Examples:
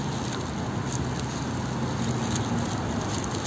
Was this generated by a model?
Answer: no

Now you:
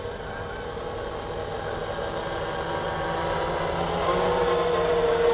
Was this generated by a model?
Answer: no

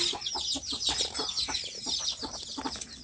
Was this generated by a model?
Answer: no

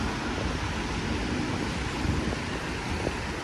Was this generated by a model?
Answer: no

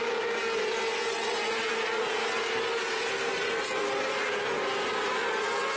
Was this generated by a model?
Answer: no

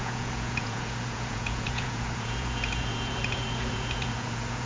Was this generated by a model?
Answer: yes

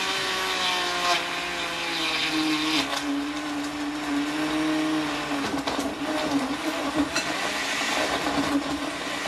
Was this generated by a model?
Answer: no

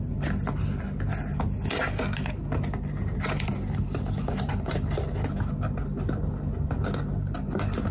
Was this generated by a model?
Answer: no